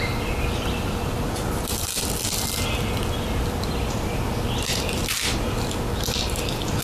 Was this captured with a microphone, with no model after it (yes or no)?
yes